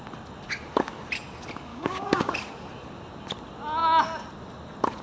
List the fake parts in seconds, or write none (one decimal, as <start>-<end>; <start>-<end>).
1.7-2.3